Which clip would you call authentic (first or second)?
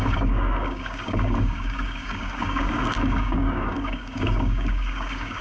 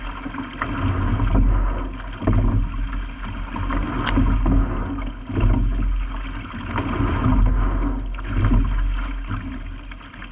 second